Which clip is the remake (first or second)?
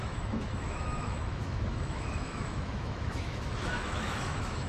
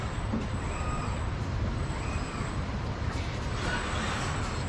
first